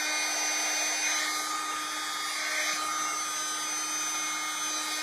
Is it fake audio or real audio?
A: real